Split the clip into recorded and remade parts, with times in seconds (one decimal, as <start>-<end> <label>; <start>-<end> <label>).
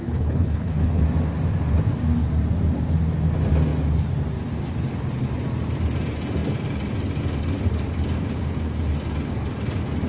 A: 0.0-1.0 remade; 1.0-10.1 recorded